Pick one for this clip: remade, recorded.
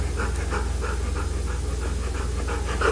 recorded